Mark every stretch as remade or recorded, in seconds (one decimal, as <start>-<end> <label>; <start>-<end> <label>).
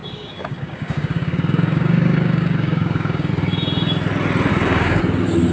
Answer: 0.0-3.3 remade; 3.3-4.5 recorded; 4.5-5.0 remade; 5.0-5.5 recorded